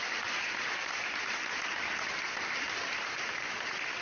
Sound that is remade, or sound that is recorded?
recorded